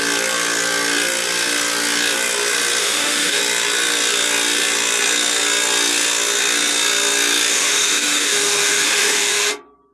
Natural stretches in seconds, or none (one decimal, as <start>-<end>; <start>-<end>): 0.0-2.8; 3.4-7.5; 9.5-9.9